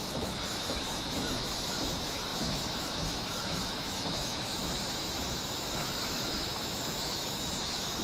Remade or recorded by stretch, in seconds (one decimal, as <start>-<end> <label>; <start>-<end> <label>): 0.0-8.0 remade